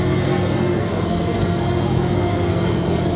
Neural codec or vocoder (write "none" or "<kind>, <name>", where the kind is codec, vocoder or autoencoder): codec, SNAC